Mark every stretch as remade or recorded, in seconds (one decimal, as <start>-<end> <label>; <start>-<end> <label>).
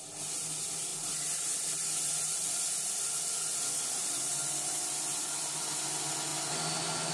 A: 0.0-7.1 recorded